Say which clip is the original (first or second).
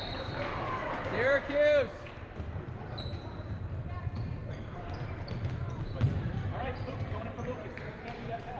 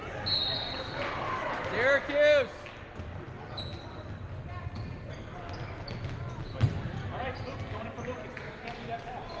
second